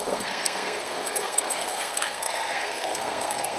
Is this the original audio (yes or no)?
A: no